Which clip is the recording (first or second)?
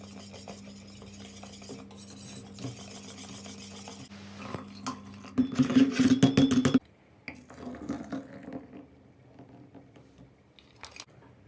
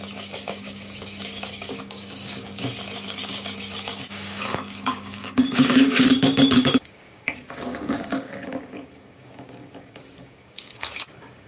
first